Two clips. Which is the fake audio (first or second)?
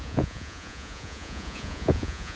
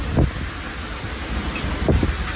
first